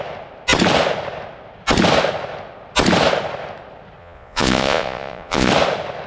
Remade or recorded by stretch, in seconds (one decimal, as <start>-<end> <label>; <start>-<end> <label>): 0.0-4.0 recorded; 4.0-5.5 remade; 5.5-6.1 recorded